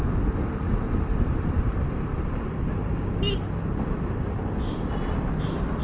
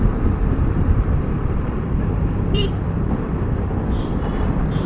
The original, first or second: first